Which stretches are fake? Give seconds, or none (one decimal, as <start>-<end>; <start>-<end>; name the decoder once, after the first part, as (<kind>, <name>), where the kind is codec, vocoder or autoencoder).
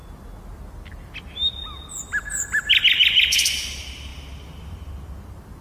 none